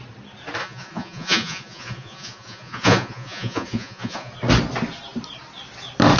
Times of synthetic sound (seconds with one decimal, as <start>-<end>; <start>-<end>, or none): 0.6-4.3